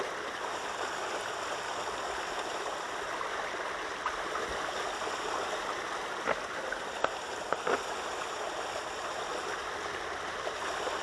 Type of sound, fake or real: real